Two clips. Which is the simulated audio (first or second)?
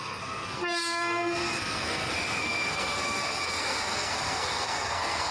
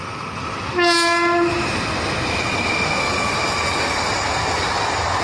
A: first